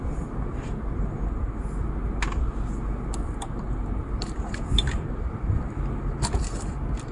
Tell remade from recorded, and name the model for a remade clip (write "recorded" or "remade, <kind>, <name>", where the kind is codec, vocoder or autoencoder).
recorded